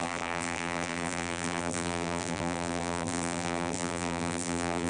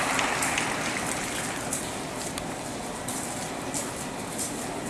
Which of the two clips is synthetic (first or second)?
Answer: first